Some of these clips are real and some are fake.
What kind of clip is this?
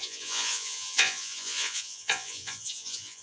fake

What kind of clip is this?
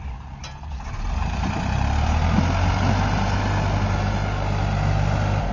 real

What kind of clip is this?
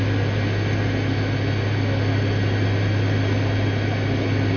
real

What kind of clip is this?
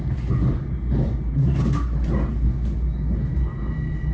real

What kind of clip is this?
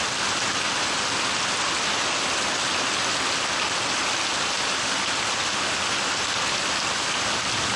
real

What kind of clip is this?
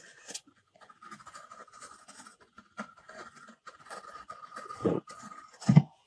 fake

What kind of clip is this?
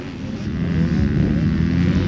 real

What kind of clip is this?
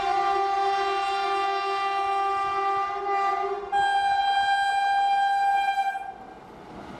real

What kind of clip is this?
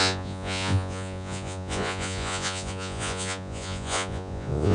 fake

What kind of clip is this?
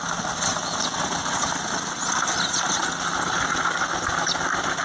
real